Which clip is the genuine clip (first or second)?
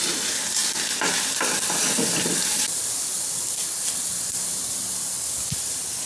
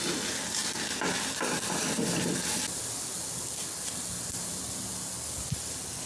second